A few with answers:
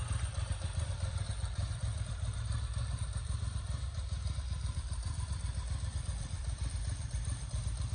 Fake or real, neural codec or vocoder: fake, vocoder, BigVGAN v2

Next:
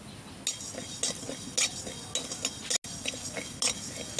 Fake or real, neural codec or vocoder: real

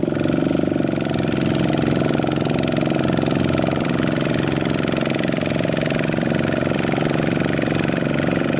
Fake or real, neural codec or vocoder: fake, vocoder, BigVGAN v2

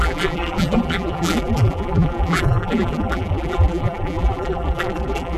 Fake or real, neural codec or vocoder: fake, vocoder, BigVGAN v2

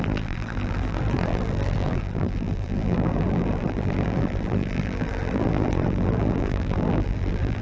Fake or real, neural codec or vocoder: fake, vocoder, BigVGAN v2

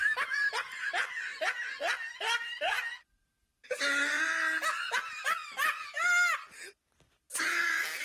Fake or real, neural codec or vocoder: real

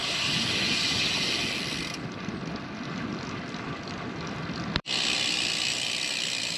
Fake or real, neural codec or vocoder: fake, vocoder, BigVGAN v2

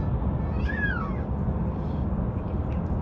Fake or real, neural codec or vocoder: real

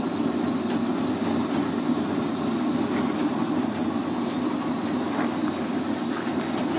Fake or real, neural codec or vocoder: real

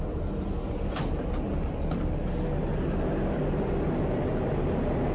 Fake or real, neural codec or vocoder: real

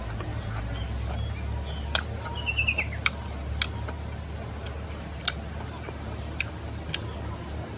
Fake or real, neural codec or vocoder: real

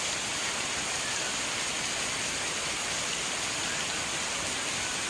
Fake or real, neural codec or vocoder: real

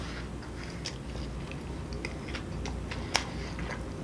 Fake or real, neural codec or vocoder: real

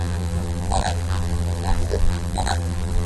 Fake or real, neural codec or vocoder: fake, vocoder, BigVGAN v2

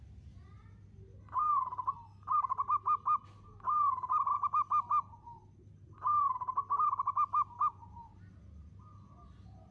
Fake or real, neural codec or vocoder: real